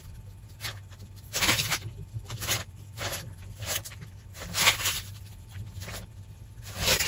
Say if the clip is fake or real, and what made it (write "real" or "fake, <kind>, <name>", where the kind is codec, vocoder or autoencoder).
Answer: fake, vocoder, BigVGAN v2